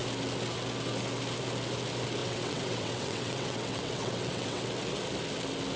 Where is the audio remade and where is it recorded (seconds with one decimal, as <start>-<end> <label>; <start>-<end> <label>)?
0.0-2.2 recorded; 2.2-4.6 remade; 4.6-5.8 recorded